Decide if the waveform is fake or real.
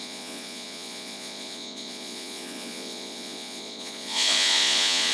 fake